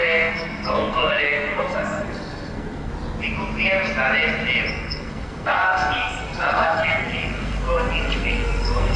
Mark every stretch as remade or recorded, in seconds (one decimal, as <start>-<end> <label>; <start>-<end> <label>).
0.0-2.9 remade; 2.9-4.7 recorded; 4.7-9.0 remade